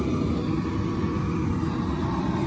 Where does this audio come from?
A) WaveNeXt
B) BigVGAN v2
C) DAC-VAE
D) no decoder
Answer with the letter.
D